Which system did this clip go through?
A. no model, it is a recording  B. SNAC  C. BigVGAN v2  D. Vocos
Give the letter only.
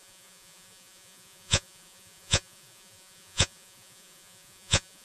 D